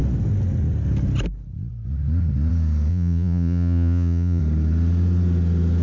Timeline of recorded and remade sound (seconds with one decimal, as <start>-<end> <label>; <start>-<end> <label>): 0.0-2.9 recorded; 2.9-4.4 remade; 4.4-5.8 recorded